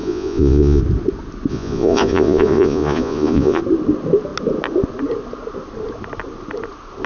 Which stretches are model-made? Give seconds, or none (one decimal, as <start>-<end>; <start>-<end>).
0.0-0.8; 1.5-3.6

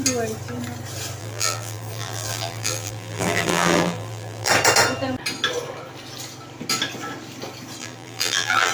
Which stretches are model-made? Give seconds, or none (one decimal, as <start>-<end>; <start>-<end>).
1.2-4.5; 7.8-8.7

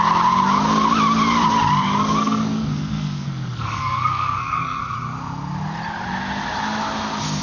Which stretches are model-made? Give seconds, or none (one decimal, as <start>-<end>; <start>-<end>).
2.2-4.8

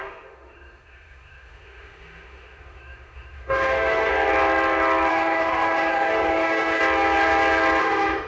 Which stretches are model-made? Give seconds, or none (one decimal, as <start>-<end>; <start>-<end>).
0.0-4.1; 5.1-6.8; 7.8-8.3

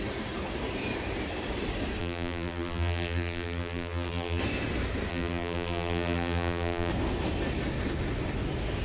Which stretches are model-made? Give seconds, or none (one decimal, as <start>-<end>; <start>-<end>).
2.0-4.4; 5.1-6.9